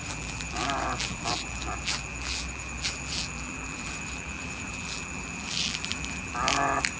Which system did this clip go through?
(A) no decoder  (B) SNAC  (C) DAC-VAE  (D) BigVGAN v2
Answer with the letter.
D